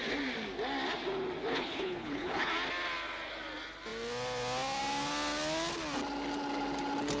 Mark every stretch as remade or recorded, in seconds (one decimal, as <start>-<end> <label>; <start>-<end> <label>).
0.0-1.5 recorded; 1.5-2.5 remade; 2.5-7.2 recorded

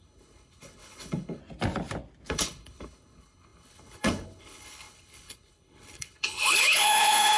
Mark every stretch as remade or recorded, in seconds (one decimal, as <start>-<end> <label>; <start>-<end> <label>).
0.0-1.4 remade; 1.4-2.3 recorded; 2.3-7.4 remade

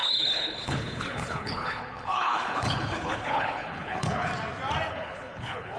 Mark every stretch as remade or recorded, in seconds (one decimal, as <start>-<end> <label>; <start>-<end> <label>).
0.0-4.3 remade; 4.3-4.9 recorded; 4.9-5.8 remade

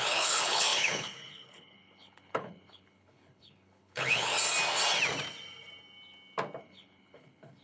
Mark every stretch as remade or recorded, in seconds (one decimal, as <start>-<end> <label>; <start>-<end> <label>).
0.0-4.3 remade; 4.3-6.6 recorded; 6.6-7.6 remade

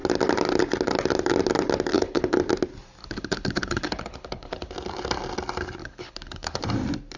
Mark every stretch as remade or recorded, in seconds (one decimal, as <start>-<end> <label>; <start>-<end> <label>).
0.0-1.9 recorded; 1.9-2.4 remade; 2.4-3.0 recorded; 3.0-4.7 remade; 4.7-5.8 recorded; 5.8-6.6 remade; 6.6-7.2 recorded

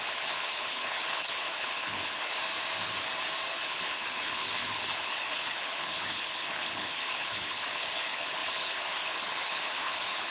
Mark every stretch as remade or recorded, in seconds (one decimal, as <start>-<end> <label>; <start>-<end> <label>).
0.0-2.4 remade; 2.4-3.5 recorded; 3.5-10.3 remade